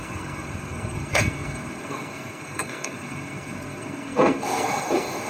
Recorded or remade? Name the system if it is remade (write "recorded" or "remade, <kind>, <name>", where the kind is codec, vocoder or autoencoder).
remade, codec, SNAC